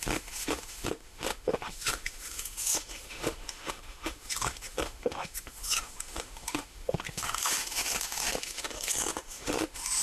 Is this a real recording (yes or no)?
no